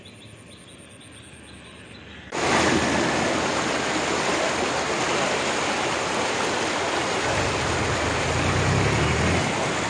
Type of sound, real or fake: real